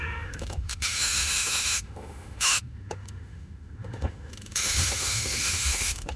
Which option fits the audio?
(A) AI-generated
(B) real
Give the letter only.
A